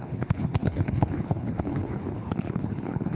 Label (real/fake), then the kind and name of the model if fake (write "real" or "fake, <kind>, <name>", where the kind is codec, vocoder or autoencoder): fake, codec, HILCodec